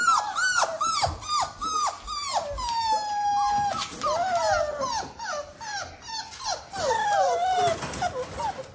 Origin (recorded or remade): recorded